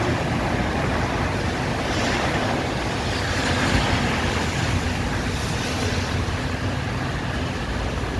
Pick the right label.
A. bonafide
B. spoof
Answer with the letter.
A